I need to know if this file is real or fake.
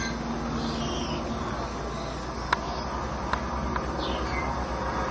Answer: real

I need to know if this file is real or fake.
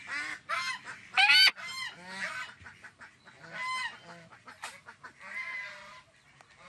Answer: real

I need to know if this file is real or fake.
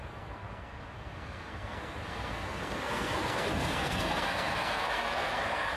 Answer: fake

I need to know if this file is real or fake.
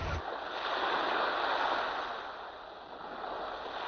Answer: real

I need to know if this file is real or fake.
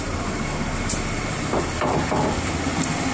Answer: real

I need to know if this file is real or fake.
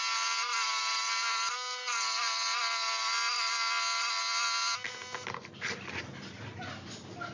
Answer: real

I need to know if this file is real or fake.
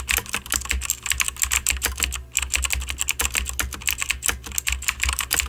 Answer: real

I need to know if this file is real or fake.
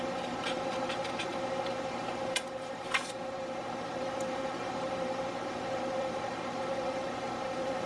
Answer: fake